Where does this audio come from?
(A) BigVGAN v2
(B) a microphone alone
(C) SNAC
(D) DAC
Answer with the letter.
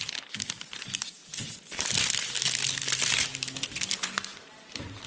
B